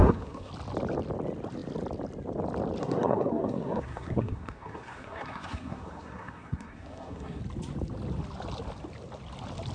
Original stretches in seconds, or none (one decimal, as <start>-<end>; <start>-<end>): 0.5-2.8; 7.4-9.7